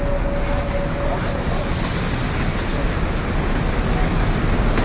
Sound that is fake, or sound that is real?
real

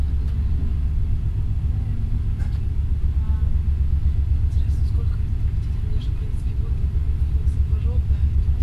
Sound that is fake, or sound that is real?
real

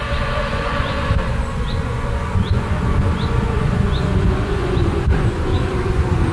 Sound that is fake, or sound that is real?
fake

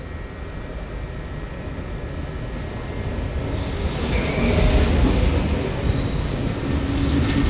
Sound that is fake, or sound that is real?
real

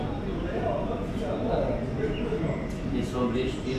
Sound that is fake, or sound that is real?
real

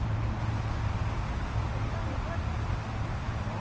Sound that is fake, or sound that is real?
real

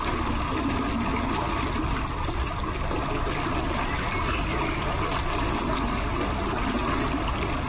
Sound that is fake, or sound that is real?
real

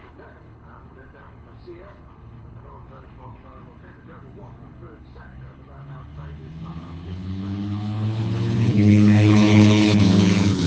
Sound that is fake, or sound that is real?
fake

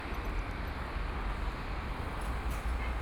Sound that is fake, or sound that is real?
real